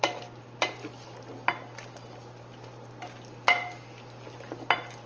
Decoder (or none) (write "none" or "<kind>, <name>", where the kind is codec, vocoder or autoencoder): none